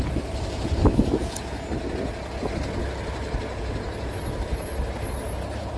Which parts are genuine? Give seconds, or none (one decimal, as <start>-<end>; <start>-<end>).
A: 0.8-4.3